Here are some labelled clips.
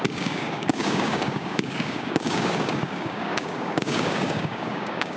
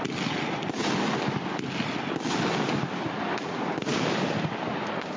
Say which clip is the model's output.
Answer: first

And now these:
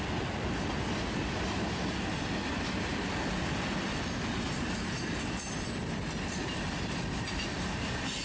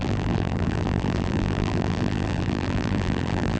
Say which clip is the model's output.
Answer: second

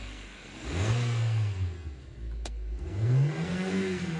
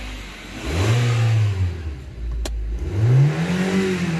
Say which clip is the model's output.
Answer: first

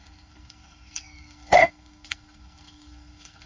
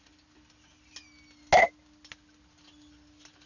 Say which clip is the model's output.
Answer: first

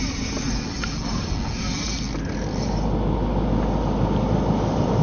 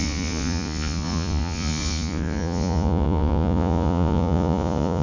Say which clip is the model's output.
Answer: second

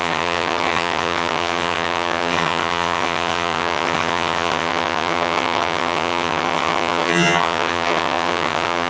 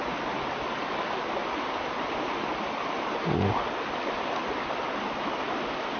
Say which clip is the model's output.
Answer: first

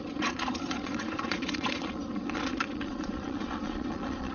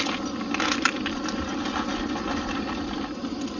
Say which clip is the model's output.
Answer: first